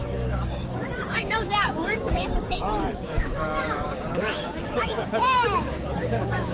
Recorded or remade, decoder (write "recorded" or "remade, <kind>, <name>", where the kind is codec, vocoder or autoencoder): remade, codec, DAC